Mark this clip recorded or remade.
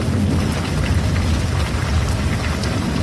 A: recorded